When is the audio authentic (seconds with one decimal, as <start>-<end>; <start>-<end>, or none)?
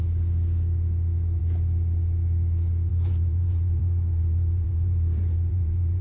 0.0-2.9